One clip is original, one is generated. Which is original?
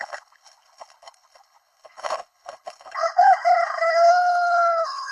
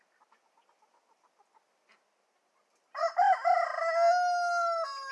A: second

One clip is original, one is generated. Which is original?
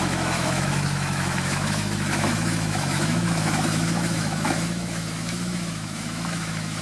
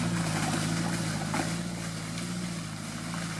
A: second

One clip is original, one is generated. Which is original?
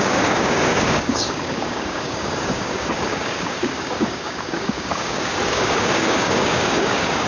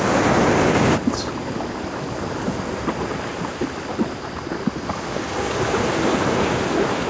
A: second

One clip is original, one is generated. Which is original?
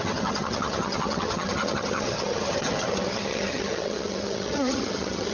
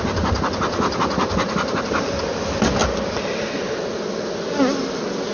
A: second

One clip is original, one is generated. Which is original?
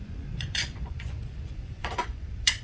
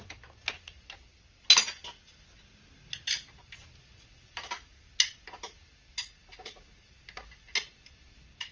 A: second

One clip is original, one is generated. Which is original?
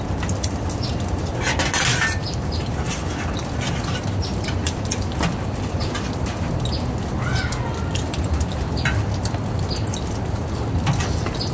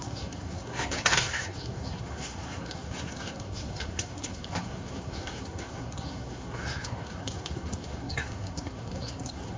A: first